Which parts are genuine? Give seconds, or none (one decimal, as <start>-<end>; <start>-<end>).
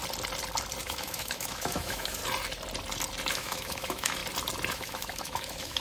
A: 0.0-0.8; 2.2-3.3; 4.2-4.7